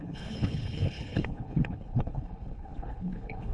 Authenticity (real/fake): fake